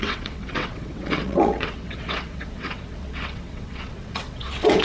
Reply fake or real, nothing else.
fake